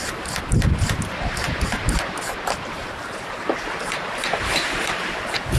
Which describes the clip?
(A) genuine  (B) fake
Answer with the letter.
A